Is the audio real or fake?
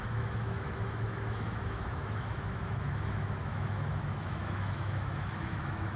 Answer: fake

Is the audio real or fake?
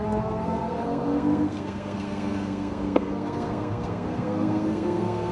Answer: fake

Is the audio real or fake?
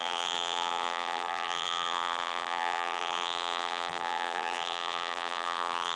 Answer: fake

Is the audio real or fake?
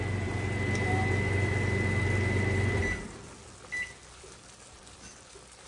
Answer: real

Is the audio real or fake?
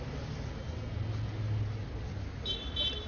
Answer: real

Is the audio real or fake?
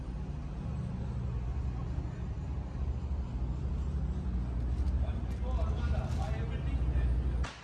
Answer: real